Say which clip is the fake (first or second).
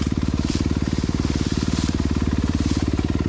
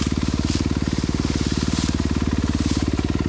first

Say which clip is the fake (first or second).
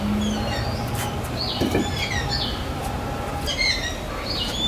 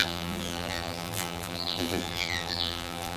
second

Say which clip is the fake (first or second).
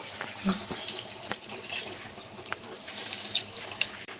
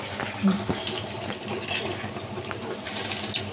first